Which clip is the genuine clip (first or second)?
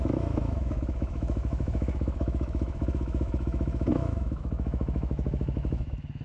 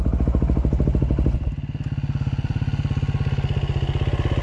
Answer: second